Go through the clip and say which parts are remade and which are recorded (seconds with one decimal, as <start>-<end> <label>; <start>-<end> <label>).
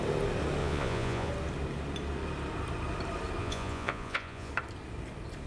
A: 0.0-0.6 recorded; 0.6-1.3 remade; 1.3-3.4 recorded; 3.4-4.5 remade; 4.5-5.5 recorded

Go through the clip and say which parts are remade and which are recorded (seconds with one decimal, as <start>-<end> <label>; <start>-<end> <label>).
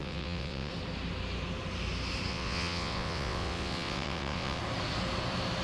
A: 0.0-0.7 remade; 0.7-2.3 recorded; 2.3-4.6 remade; 4.6-5.6 recorded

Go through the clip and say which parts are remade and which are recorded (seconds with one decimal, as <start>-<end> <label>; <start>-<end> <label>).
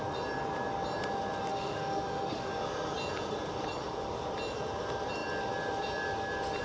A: 0.0-1.5 recorded; 1.5-2.5 remade; 2.5-6.6 recorded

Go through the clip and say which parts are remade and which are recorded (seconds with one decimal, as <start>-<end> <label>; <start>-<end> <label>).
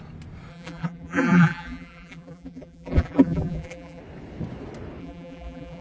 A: 0.0-0.5 recorded; 0.5-4.0 remade; 4.0-5.0 recorded; 5.0-5.8 remade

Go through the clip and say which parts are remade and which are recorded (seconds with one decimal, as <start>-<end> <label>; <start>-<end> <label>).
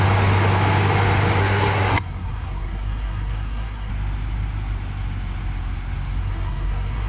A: 0.0-1.4 recorded; 1.4-3.9 remade; 3.9-6.2 recorded; 6.2-7.1 remade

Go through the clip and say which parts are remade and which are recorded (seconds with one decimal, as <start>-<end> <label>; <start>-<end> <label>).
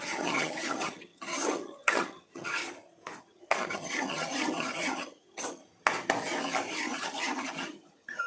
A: 0.0-2.6 remade; 2.6-3.2 recorded; 3.2-5.6 remade; 5.6-6.7 recorded; 6.7-8.3 remade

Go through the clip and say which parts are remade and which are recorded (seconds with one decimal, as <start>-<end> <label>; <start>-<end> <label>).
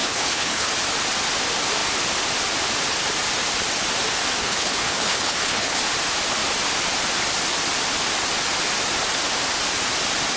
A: 0.0-0.7 remade; 0.7-4.4 recorded; 4.4-5.8 remade; 5.8-10.4 recorded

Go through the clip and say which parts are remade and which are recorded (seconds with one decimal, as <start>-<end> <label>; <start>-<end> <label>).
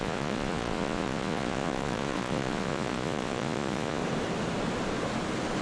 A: 0.0-4.0 remade; 4.0-5.6 recorded